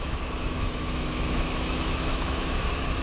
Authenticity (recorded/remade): remade